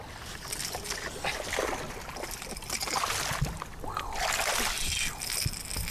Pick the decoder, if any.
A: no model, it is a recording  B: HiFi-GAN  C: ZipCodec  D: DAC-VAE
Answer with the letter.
A